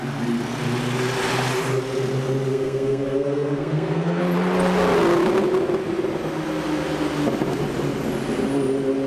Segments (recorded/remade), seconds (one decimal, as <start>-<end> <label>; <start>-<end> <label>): 0.0-2.5 recorded; 2.5-4.2 remade; 4.2-9.1 recorded